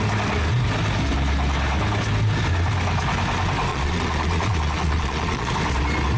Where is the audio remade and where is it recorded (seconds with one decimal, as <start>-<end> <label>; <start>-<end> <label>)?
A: 0.0-3.7 recorded; 3.7-5.5 remade; 5.5-6.2 recorded